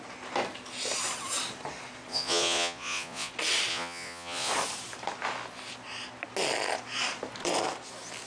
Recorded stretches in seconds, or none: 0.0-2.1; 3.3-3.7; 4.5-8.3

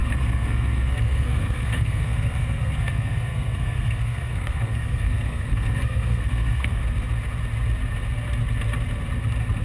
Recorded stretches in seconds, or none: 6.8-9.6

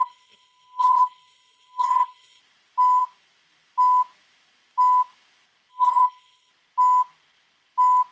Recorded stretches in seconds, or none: 2.4-5.7; 6.5-8.1